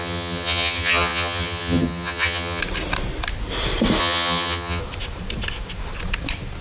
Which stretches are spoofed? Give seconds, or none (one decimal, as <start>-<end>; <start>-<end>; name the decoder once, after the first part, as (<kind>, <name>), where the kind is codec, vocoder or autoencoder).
0.0-2.6 (vocoder, HiFi-GAN); 4.0-4.8